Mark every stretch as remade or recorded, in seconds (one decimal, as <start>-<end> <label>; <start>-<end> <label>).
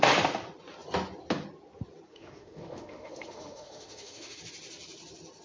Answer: 0.0-2.1 recorded; 2.1-4.4 remade; 4.4-5.4 recorded